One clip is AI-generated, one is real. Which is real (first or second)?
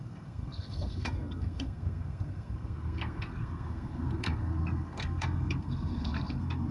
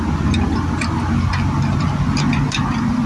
second